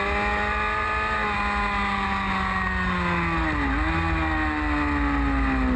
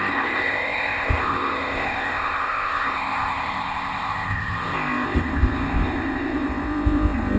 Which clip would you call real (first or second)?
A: first